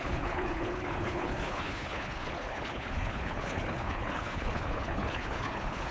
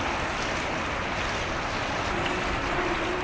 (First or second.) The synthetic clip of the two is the first